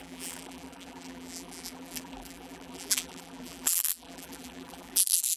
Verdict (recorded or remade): remade